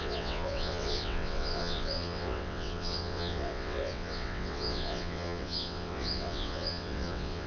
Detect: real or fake fake